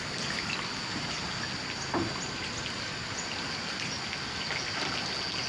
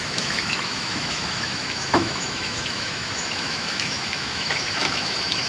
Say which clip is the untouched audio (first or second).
first